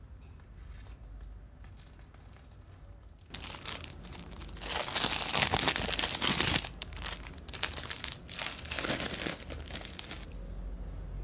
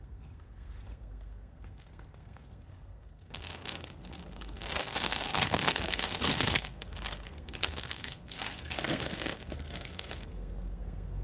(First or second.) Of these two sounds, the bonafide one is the first